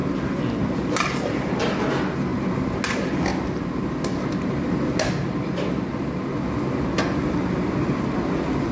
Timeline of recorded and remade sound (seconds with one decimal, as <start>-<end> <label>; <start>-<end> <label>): 0.0-8.7 recorded